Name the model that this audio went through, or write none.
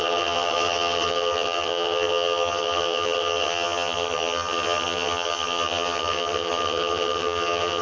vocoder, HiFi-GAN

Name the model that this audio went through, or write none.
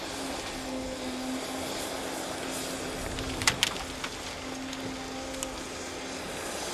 none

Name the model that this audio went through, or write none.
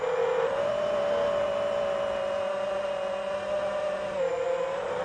none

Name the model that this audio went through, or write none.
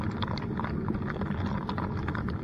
none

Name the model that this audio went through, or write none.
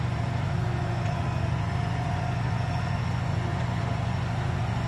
vocoder, Vocos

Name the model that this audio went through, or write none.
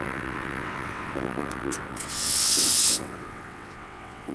vocoder, WaveNeXt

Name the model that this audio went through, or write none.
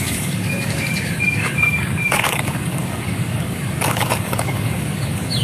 codec, DAC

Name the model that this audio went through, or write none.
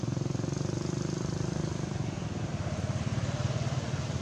none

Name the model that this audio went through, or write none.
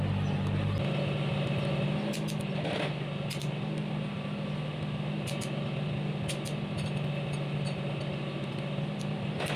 none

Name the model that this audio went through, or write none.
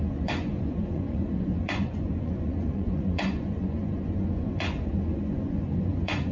vocoder, Vocos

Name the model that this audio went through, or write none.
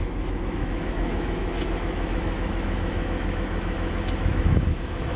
autoencoder, DAC-VAE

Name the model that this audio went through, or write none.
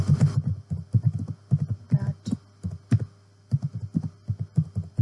none